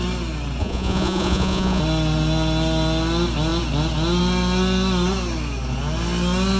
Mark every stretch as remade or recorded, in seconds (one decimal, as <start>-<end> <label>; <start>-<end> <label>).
0.0-0.6 recorded; 0.6-1.8 remade; 1.8-6.6 recorded